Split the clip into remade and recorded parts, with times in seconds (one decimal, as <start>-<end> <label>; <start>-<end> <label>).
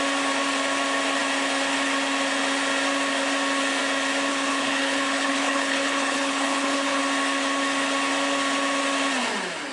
0.0-4.3 recorded; 4.3-7.0 remade; 7.0-9.7 recorded